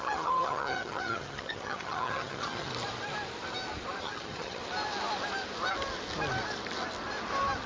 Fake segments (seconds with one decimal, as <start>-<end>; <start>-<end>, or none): 0.0-2.7; 4.0-4.6